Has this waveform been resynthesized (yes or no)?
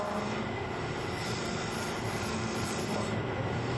no